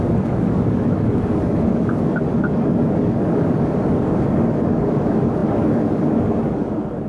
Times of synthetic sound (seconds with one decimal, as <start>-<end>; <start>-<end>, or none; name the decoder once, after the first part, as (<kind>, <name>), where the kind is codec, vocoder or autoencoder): 0.0-7.1 (codec, DAC)